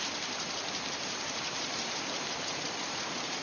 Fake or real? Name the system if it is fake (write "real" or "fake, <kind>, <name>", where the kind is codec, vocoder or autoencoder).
fake, vocoder, BigVGAN v2